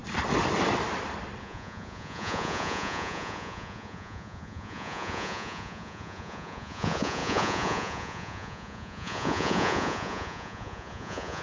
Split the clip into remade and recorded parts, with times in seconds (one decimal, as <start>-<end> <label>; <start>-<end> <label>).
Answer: 0.0-1.4 recorded; 1.4-11.4 remade